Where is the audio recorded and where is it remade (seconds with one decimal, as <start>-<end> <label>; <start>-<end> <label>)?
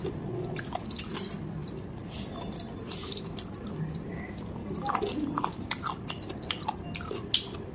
0.0-7.7 recorded